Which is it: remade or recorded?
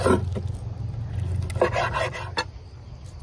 recorded